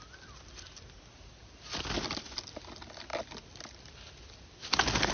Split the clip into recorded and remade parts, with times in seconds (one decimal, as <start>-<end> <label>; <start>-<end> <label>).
0.0-5.1 recorded